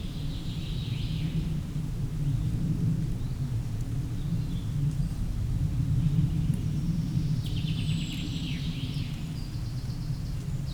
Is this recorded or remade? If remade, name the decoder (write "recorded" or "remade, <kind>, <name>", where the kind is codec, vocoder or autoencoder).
recorded